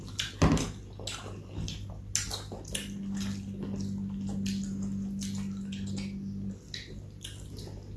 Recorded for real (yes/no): yes